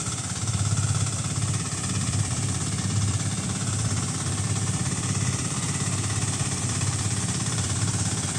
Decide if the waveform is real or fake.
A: fake